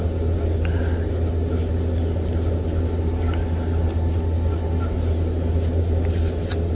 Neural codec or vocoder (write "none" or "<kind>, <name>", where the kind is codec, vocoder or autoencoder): none